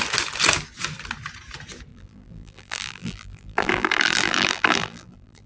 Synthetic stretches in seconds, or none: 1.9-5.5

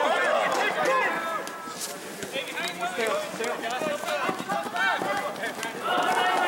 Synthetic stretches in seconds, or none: none

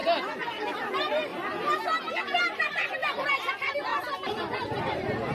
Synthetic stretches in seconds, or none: 0.7-1.3; 2.4-3.9; 4.6-5.3

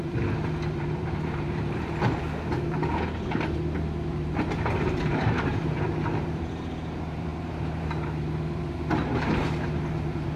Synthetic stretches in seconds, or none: 0.0-2.8; 4.1-10.4

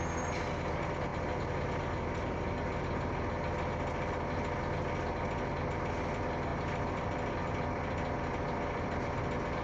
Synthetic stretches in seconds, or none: 6.5-9.2